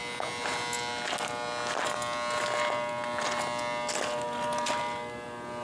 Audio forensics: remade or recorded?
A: recorded